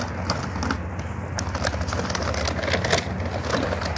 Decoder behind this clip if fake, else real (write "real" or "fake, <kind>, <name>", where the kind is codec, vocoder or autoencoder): real